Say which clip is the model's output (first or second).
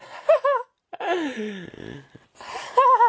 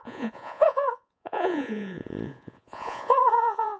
second